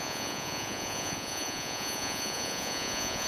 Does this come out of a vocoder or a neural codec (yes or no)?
yes